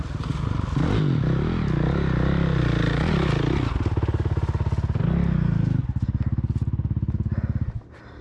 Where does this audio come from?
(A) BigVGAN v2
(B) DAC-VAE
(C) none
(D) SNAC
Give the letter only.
C